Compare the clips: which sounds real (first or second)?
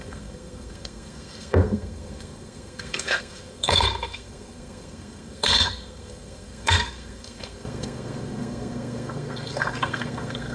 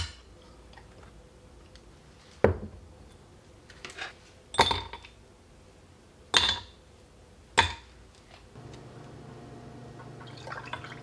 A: second